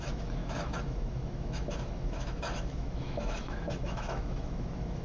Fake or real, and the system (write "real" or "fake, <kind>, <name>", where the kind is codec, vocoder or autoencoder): fake, autoencoder, DAC-VAE